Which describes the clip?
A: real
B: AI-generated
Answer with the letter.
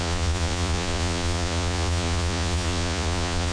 B